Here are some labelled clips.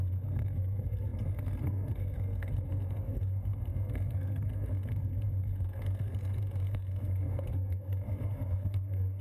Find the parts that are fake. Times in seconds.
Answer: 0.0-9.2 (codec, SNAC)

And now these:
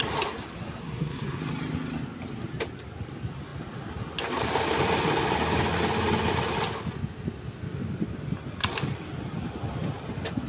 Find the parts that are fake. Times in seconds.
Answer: 0.8-1.4 (codec, SNAC)

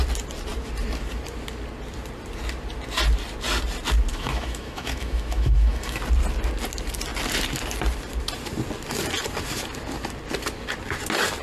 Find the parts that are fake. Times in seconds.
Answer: 4.1-6.0 (autoencoder, DAC-VAE)